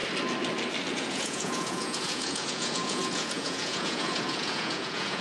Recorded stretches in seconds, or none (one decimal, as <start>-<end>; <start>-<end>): 0.0-0.9

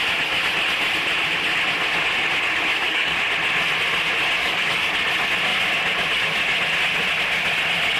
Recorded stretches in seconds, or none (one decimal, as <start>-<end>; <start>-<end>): 0.0-2.7; 3.2-4.4; 4.9-8.0

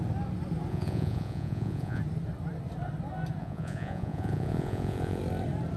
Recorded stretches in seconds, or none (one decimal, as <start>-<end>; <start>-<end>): 0.0-0.7; 2.0-3.4; 5.2-5.8